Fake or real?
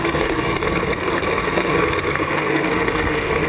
fake